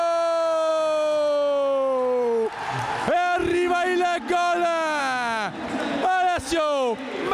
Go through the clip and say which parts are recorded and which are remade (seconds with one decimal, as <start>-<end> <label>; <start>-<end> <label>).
0.0-7.3 recorded